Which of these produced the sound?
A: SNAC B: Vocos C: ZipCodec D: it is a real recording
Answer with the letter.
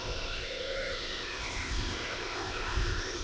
C